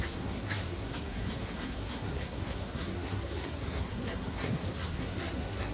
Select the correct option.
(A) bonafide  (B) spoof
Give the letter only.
B